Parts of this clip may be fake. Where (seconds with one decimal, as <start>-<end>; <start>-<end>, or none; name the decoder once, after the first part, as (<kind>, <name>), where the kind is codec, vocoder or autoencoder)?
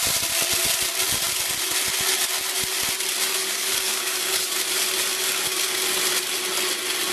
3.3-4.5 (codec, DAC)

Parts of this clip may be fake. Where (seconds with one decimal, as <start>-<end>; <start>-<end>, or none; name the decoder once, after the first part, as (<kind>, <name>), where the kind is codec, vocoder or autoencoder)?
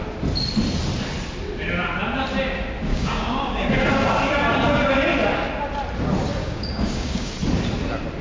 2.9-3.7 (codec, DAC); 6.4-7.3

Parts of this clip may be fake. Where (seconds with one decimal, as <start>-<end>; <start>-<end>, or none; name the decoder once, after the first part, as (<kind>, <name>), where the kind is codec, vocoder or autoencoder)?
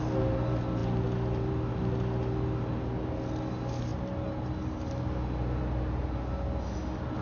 none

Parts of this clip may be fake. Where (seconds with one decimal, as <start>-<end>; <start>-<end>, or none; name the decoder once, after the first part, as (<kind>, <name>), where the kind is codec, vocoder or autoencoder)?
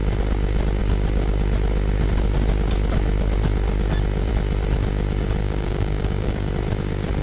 5.4-6.5 (codec, DAC)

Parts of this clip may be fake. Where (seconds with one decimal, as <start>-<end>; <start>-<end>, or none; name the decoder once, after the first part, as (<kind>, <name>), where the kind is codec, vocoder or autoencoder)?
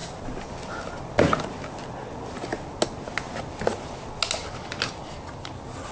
none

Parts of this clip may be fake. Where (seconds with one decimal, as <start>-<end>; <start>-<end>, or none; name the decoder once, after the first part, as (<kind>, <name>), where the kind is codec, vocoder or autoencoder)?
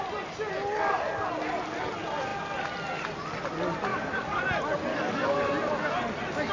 3.9-4.4 (codec, DAC); 4.9-5.5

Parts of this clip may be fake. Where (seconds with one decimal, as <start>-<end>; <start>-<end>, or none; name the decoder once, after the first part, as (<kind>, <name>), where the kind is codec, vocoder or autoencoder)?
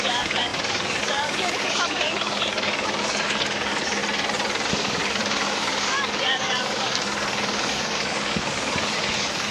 0.0-4.0 (codec, DAC); 4.7-9.5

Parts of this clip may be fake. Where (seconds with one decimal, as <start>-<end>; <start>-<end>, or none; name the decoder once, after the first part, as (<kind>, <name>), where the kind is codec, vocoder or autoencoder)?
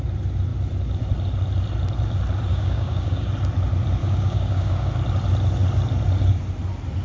2.5-3.3 (codec, DAC); 4.0-4.9